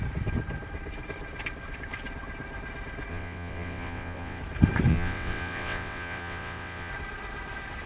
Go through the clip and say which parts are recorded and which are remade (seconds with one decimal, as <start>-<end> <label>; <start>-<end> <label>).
0.0-3.1 recorded; 3.1-4.4 remade; 4.4-4.9 recorded; 4.9-6.9 remade; 6.9-7.9 recorded